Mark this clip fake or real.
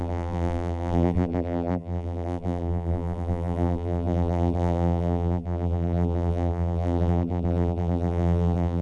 fake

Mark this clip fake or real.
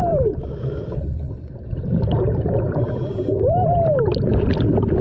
fake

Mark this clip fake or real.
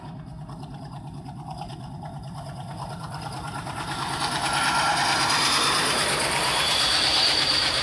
fake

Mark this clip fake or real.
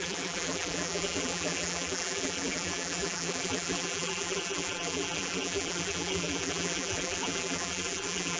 fake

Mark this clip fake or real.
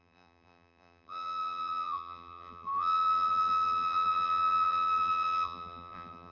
fake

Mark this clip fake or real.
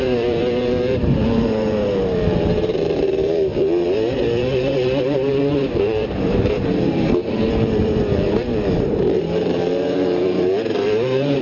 fake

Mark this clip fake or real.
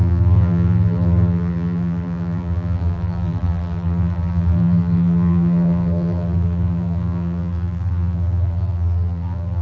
fake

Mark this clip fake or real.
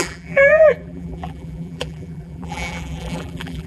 fake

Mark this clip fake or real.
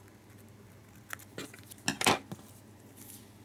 real